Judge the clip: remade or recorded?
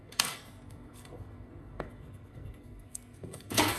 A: remade